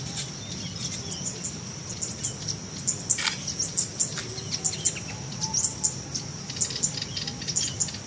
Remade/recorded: recorded